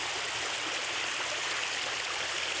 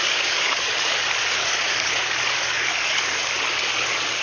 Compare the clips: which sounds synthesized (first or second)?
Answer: second